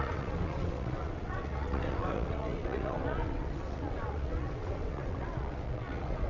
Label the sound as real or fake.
fake